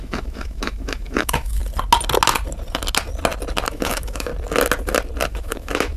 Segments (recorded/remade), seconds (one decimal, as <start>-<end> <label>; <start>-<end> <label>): 0.0-1.6 remade; 1.6-3.7 recorded; 3.7-4.3 remade; 4.3-5.3 recorded; 5.3-6.0 remade